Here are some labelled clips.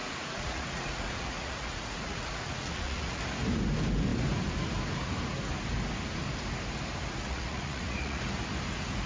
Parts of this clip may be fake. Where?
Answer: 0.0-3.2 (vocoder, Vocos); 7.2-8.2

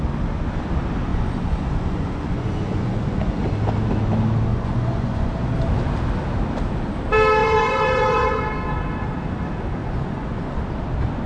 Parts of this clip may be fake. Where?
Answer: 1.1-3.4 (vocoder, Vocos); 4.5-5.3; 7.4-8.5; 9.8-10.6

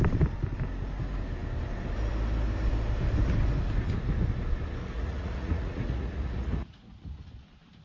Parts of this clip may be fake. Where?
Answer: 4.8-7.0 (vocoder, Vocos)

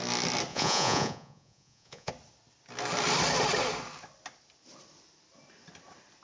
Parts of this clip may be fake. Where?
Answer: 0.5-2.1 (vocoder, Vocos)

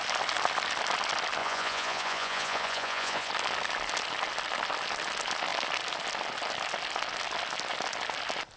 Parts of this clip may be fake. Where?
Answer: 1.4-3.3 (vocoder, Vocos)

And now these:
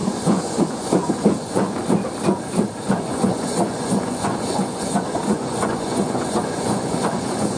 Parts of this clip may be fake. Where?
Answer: 0.0-1.8 (vocoder, Vocos); 3.0-7.6

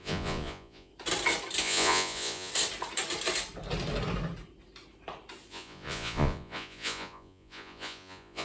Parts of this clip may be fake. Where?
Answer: 0.0-0.9 (vocoder, Vocos); 1.6-2.5; 5.5-8.4